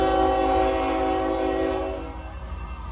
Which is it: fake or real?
real